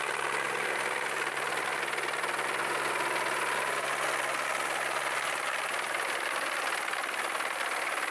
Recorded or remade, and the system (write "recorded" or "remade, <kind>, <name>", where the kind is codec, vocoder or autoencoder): recorded